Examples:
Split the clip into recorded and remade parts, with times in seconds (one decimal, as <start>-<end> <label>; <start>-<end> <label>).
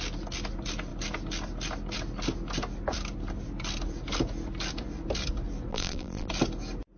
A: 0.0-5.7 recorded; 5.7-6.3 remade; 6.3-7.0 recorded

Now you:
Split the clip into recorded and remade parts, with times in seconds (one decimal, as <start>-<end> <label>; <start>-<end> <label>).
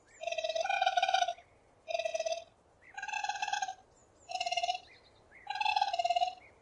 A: 0.0-2.1 recorded; 2.1-3.4 remade; 3.4-6.6 recorded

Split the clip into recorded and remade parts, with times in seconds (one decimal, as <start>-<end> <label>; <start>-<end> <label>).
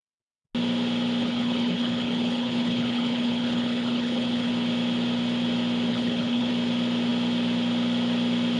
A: 0.0-1.2 recorded; 1.2-4.5 remade; 4.5-5.9 recorded; 5.9-6.5 remade; 6.5-8.6 recorded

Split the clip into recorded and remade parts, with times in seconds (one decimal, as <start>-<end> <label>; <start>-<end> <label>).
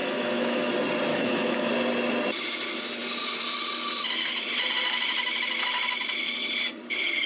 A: 0.0-0.7 remade; 0.7-1.1 recorded; 1.1-1.7 remade; 1.7-7.3 recorded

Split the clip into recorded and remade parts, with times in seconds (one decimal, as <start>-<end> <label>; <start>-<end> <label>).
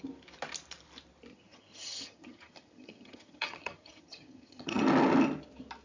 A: 0.0-1.3 recorded; 1.3-4.8 remade; 4.8-5.8 recorded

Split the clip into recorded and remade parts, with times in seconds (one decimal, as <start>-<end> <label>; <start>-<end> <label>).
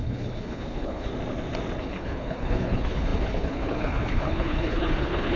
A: 0.0-1.1 remade; 1.1-1.8 recorded; 1.8-5.4 remade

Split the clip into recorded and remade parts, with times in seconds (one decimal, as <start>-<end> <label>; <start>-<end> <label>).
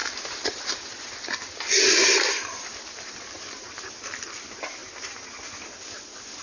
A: 0.0-4.8 recorded; 4.8-5.3 remade; 5.3-6.4 recorded